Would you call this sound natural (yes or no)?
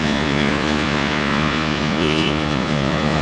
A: no